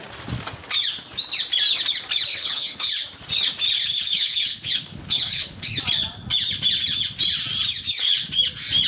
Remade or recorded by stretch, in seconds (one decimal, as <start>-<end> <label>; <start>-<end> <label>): 0.0-2.3 recorded; 2.3-2.9 remade; 2.9-3.9 recorded; 3.9-5.8 remade; 5.8-8.9 recorded

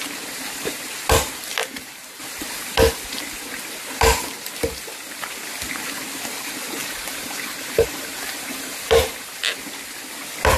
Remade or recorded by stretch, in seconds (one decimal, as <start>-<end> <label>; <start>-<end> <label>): 0.0-1.6 recorded; 1.6-2.2 remade; 2.2-6.8 recorded; 6.8-9.4 remade; 9.4-10.6 recorded

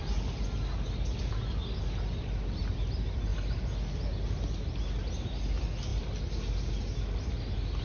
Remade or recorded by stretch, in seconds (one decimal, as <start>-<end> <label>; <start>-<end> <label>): 0.0-7.8 recorded

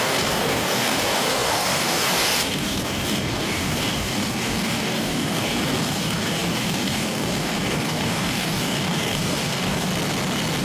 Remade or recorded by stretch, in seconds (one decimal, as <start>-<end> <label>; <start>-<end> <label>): 0.0-9.9 remade; 9.9-10.6 recorded